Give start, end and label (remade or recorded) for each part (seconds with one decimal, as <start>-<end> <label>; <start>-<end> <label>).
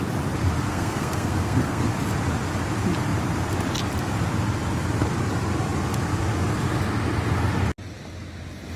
0.0-0.7 recorded; 0.7-1.8 remade; 1.8-8.8 recorded